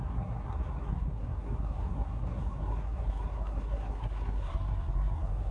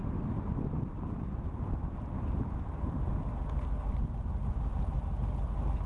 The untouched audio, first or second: second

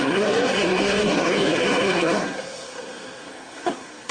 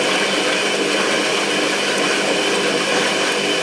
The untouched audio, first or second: second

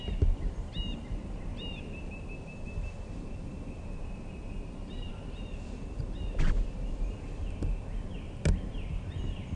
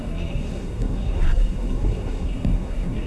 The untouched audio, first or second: first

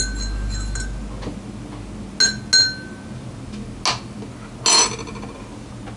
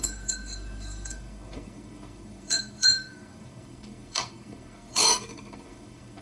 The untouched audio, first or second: first